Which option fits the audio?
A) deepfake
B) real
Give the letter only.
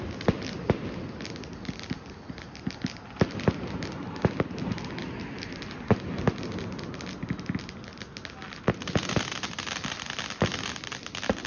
B